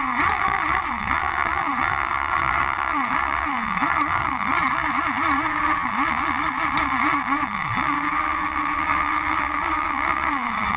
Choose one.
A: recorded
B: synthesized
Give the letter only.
B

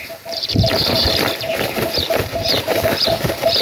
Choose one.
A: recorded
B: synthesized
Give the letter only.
B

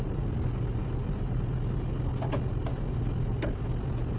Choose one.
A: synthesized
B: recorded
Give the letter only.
B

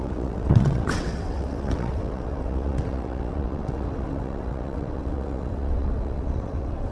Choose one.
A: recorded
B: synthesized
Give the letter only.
B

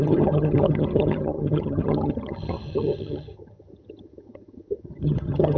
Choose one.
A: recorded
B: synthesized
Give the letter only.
B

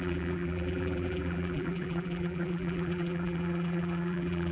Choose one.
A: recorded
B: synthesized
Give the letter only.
B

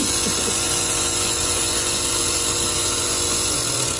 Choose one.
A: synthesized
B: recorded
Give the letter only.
A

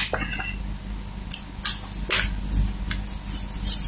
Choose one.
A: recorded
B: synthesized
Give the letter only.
A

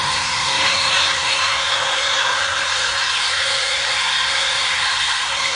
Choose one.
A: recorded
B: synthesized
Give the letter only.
B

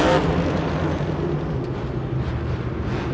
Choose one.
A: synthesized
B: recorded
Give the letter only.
B